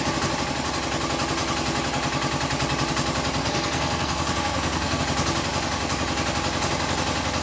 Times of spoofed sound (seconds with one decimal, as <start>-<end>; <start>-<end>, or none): 3.4-5.0